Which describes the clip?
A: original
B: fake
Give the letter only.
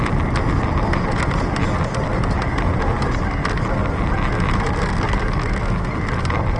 A